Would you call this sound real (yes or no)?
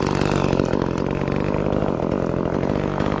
yes